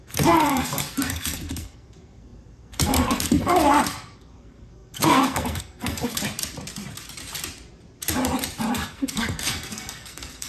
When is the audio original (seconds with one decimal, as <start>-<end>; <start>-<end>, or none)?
6.2-8.7